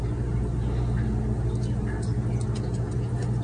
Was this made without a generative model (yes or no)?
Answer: yes